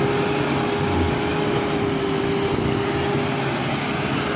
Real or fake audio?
real